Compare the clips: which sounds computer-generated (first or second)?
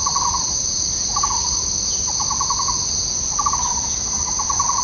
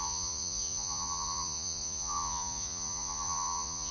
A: second